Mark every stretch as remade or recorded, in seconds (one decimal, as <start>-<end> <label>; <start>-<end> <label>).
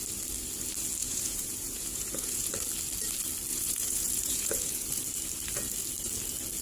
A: 0.0-1.0 recorded; 1.0-2.5 remade; 2.5-3.5 recorded; 3.5-5.0 remade; 5.0-6.6 recorded